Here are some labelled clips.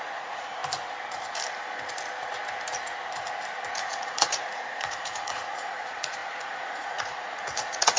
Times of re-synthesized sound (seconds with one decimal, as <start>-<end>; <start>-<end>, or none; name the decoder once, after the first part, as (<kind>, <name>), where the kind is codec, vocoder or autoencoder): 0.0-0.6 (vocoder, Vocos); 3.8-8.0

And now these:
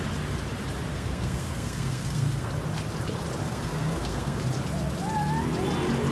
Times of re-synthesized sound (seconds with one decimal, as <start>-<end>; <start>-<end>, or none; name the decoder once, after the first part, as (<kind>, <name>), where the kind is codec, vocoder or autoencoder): 0.9-2.5 (codec, SNAC); 3.4-4.4

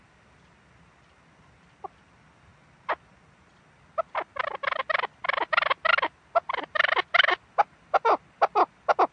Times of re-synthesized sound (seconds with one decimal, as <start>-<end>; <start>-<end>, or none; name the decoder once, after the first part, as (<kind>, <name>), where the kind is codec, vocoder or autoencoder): none